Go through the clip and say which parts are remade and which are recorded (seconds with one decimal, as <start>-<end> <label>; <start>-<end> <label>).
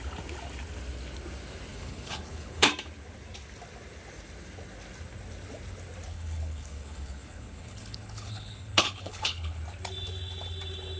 0.0-1.7 recorded; 1.7-2.7 remade; 2.7-6.1 recorded; 6.1-9.6 remade; 9.6-11.0 recorded